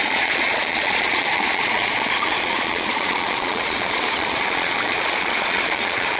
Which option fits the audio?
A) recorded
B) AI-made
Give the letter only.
B